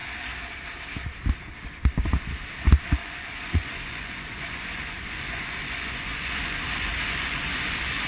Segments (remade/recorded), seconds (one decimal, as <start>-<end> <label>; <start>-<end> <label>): 0.0-3.0 recorded; 3.0-8.1 remade